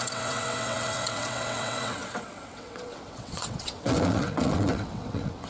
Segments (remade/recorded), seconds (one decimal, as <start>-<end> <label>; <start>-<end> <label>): 0.0-5.5 remade